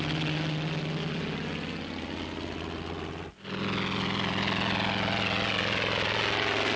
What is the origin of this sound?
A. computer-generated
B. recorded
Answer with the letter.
B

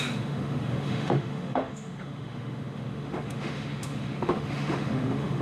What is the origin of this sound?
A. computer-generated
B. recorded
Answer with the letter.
A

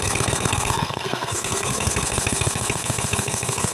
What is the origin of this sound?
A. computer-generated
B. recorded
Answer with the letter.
A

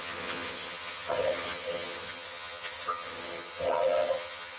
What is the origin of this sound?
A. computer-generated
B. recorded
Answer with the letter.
A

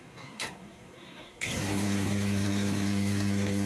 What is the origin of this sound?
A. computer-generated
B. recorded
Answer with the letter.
A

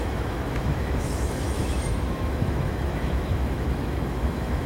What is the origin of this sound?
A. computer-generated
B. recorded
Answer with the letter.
A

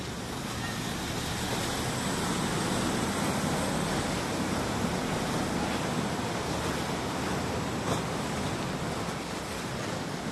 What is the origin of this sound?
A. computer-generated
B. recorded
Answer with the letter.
B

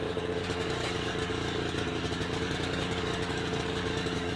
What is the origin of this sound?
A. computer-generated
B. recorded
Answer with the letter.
A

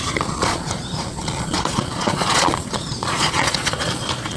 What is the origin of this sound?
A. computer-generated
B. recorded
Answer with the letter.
A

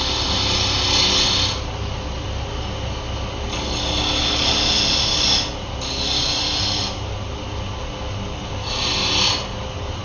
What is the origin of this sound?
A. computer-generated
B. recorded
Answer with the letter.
B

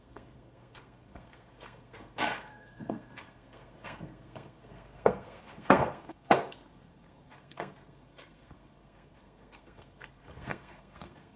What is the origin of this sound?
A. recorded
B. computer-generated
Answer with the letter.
B